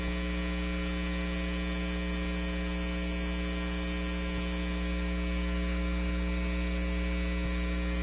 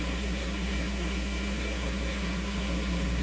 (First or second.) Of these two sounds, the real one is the first